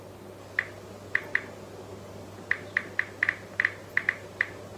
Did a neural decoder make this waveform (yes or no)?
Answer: no